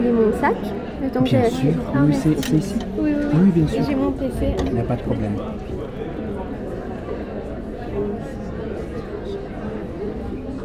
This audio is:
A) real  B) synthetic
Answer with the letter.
A